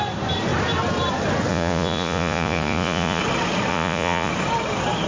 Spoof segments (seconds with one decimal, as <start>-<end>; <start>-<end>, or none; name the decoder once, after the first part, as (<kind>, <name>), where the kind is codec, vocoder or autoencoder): 1.5-3.2 (vocoder, Vocos); 3.7-4.3